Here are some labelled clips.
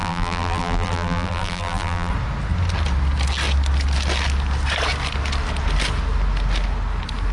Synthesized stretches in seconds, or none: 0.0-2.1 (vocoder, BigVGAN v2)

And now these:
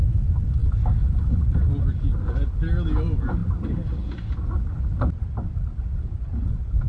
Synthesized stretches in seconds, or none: none

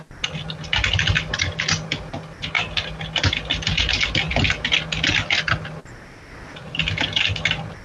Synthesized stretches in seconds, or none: none

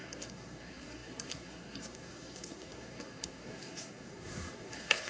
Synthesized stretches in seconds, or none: 0.0-5.1 (codec, SNAC)

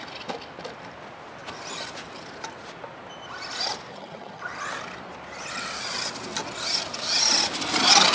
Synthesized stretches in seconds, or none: 3.9-4.4 (vocoder, HiFi-GAN)

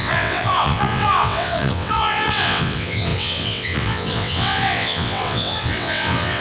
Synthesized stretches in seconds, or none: 0.0-6.4 (vocoder, WaveNeXt)